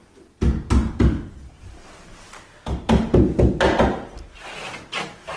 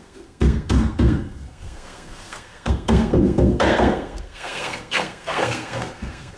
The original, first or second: first